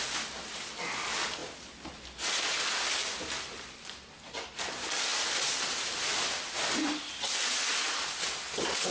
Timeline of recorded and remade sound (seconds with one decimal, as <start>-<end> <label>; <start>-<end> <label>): 0.0-8.9 recorded